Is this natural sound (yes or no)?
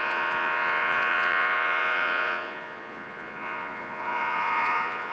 no